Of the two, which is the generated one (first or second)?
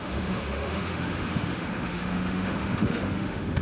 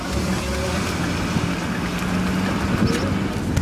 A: first